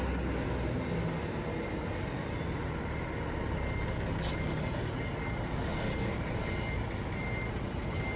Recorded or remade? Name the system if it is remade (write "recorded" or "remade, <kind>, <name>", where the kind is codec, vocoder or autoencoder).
recorded